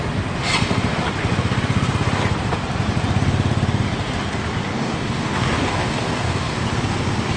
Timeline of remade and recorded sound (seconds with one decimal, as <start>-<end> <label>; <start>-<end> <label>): 0.0-4.7 recorded; 4.7-6.6 remade; 6.6-7.4 recorded